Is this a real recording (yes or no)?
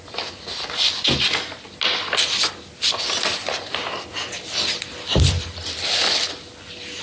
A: yes